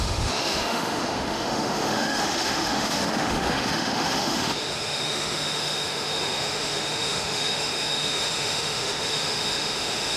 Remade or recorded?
remade